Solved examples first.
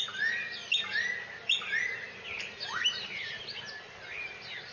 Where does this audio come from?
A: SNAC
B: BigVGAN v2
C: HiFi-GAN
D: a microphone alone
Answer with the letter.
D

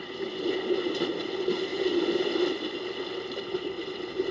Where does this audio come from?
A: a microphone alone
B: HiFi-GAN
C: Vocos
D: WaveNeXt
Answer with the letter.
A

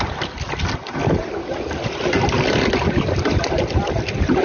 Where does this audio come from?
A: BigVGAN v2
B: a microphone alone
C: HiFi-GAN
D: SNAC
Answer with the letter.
B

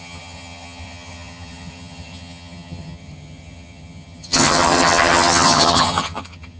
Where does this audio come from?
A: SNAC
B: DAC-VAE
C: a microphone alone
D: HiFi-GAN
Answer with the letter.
D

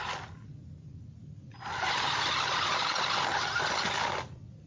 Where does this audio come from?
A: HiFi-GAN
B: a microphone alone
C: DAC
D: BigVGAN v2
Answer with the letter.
B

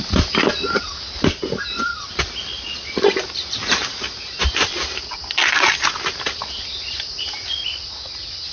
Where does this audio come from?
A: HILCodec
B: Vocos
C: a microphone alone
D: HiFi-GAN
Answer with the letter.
C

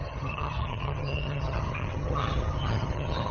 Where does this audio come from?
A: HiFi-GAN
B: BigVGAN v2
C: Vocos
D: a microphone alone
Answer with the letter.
A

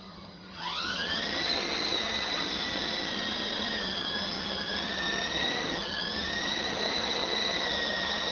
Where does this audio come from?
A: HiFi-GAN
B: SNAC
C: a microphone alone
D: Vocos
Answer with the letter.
A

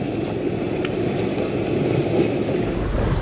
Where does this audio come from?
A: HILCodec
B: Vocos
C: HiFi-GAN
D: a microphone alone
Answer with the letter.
D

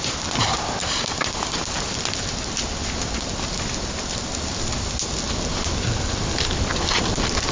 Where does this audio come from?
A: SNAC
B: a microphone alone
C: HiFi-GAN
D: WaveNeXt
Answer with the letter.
B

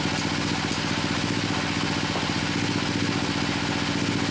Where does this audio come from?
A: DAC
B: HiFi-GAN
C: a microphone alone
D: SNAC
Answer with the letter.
C